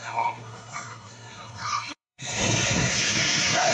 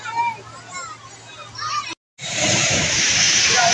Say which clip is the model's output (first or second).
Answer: first